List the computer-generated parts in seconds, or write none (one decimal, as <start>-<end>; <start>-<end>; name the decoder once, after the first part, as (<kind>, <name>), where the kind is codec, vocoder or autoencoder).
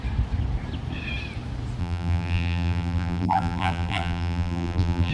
1.8-5.1 (vocoder, BigVGAN v2)